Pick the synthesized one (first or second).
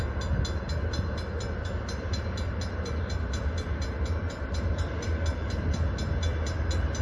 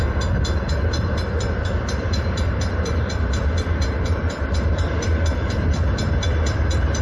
second